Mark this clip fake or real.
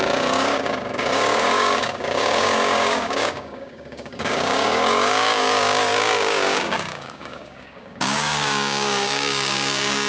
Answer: fake